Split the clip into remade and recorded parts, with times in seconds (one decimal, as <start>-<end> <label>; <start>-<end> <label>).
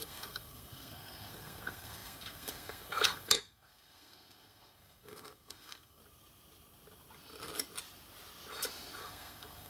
0.0-6.0 remade; 6.0-9.0 recorded; 9.0-9.7 remade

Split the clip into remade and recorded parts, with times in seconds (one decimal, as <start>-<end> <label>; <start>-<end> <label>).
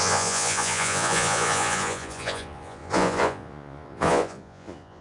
0.0-5.0 remade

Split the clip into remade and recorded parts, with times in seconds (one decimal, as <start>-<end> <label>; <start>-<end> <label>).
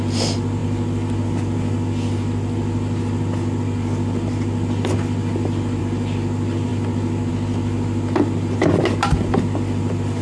0.0-10.2 recorded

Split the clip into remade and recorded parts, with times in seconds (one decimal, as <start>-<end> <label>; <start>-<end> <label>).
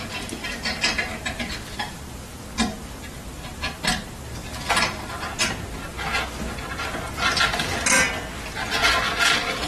0.0-0.4 recorded; 0.4-2.0 remade; 2.0-9.7 recorded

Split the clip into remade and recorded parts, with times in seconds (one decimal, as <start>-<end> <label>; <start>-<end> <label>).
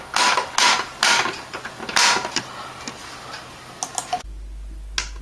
0.0-5.2 recorded